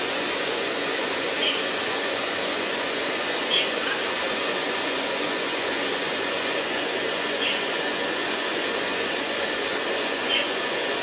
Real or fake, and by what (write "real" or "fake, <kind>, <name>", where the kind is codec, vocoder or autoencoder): fake, vocoder, Vocos